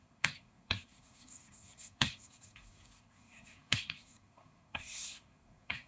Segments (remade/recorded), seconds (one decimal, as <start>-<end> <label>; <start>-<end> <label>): 0.0-5.9 remade